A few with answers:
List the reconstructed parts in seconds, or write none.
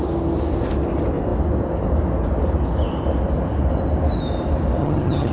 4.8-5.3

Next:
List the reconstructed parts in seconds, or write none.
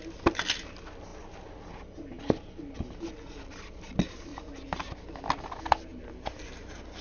none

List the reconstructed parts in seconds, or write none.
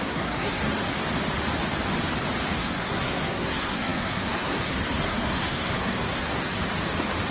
0.0-0.7; 2.6-6.6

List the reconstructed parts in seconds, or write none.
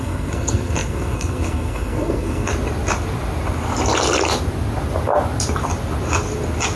0.0-2.5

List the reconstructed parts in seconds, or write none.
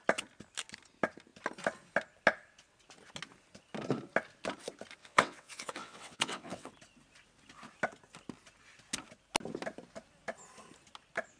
5.0-6.7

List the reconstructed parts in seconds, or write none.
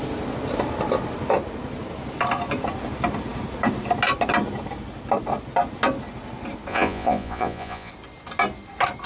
6.7-7.9